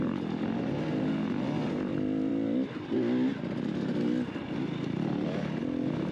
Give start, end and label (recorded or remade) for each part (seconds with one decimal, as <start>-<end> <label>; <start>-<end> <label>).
0.0-6.1 recorded